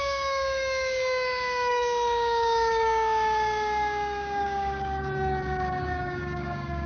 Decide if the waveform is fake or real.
fake